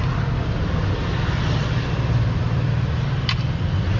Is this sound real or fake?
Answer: real